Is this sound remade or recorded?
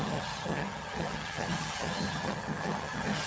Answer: remade